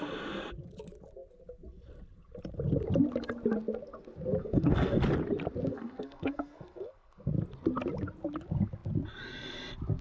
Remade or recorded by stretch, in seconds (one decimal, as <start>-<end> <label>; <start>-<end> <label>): 0.0-4.4 recorded; 4.4-5.0 remade; 5.0-5.7 recorded; 5.7-7.3 remade; 7.3-10.0 recorded